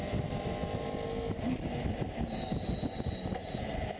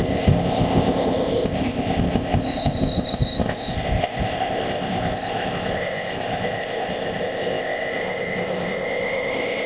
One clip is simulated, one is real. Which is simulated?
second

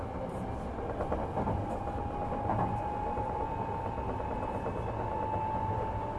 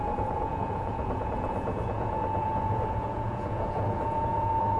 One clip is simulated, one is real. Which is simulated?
second